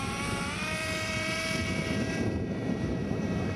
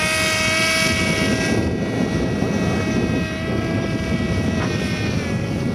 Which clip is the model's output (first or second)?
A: first